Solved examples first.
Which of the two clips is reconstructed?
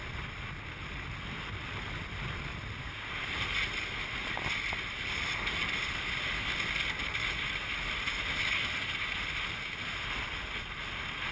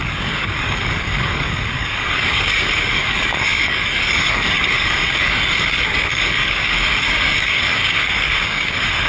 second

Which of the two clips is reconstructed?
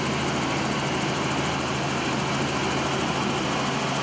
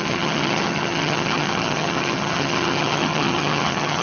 second